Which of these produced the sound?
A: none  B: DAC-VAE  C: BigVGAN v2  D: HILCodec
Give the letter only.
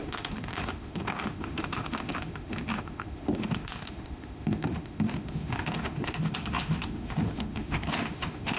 B